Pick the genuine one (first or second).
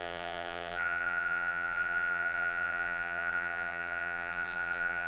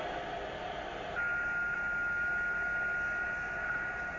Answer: second